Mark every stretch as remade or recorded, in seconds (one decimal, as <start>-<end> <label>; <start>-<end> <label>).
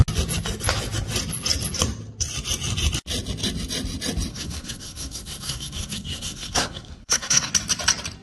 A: 0.0-4.3 recorded; 4.3-7.5 remade; 7.5-8.2 recorded